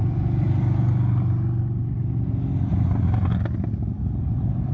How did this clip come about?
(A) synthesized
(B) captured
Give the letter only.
B